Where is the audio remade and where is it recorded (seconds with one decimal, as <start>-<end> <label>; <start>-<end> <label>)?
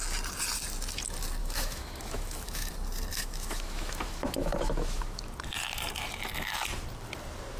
0.0-1.4 recorded; 1.4-2.7 remade; 2.7-3.1 recorded; 3.1-5.2 remade; 5.2-7.6 recorded